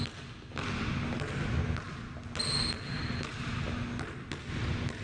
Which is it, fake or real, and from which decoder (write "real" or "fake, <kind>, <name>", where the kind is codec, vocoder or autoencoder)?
real